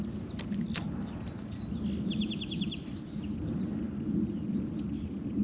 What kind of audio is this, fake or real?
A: real